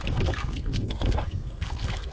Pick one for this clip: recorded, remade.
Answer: remade